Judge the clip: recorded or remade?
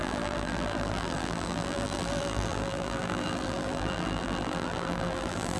remade